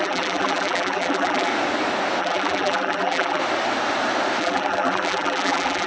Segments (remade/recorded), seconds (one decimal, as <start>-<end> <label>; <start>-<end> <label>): 0.0-1.5 remade; 1.5-2.2 recorded; 2.2-3.4 remade; 3.4-4.4 recorded; 4.4-5.9 remade